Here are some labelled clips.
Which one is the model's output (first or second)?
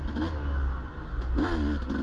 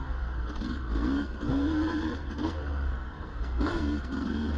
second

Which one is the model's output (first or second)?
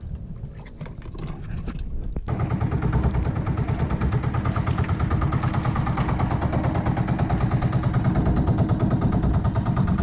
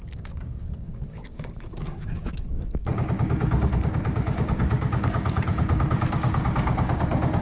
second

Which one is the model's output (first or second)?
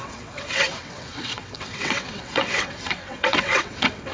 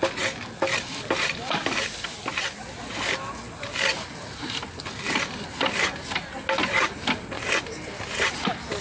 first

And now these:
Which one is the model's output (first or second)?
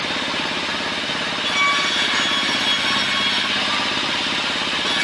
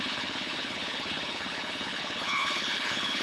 second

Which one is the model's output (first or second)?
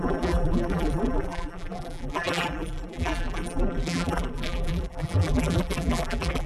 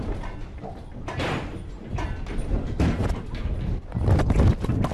first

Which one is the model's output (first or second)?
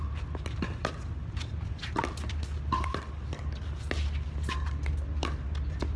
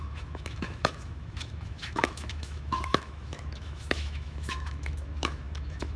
second